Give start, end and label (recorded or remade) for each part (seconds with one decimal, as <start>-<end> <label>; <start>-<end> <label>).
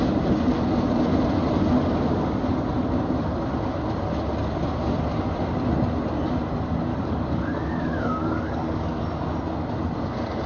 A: 0.0-6.9 recorded; 6.9-9.0 remade; 9.0-10.5 recorded